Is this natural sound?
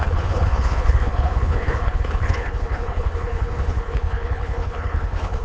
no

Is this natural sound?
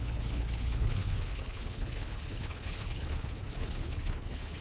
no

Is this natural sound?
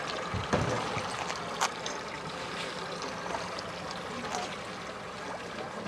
yes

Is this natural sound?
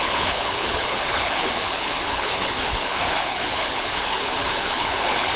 no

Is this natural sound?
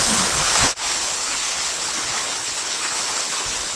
no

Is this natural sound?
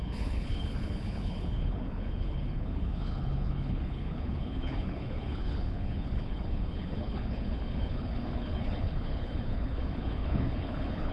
no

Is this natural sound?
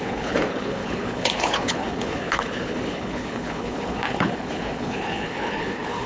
no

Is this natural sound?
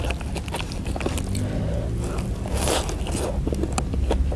yes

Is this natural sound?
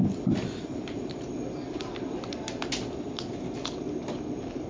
yes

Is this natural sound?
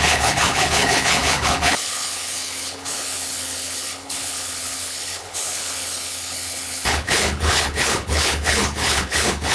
no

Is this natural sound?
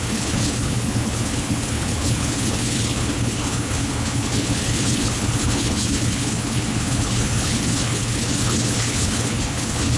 no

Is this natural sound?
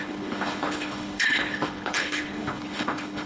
no